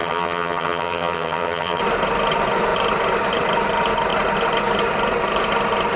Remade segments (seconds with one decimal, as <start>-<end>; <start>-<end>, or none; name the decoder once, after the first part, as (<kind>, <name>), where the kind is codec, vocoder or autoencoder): 0.0-1.8 (vocoder, HiFi-GAN)